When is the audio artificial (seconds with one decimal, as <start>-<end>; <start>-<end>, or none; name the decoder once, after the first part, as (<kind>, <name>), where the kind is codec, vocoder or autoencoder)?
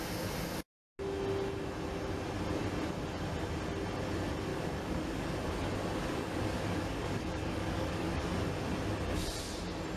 4.5-8.3 (codec, DAC)